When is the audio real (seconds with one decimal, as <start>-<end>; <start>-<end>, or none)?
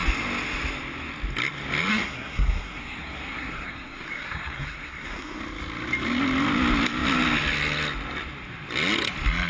0.0-1.9; 5.4-9.5